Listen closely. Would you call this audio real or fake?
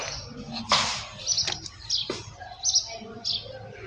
real